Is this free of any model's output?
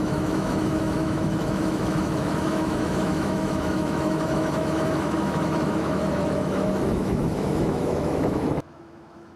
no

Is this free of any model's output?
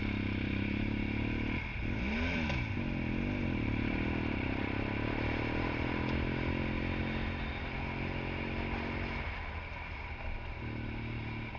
yes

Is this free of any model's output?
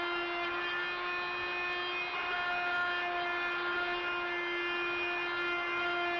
yes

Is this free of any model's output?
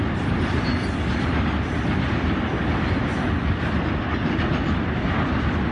yes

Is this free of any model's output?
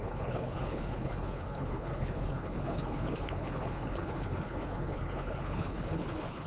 no